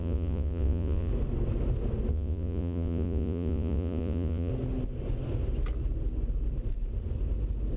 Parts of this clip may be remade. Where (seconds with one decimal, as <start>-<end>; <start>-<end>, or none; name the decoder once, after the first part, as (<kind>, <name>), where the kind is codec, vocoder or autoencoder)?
0.0-1.1 (vocoder, Vocos); 2.1-4.5